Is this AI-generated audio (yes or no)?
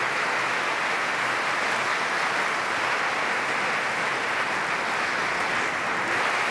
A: no